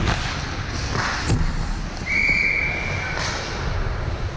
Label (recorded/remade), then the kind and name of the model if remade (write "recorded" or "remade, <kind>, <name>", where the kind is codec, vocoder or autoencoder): recorded